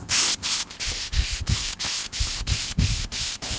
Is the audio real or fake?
fake